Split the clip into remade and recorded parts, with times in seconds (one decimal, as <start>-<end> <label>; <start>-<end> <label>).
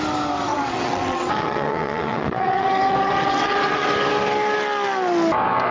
0.0-0.5 recorded; 0.5-3.9 remade; 3.9-5.7 recorded